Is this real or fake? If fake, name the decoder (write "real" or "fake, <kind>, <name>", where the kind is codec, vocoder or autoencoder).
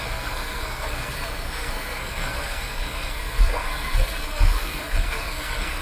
fake, codec, SNAC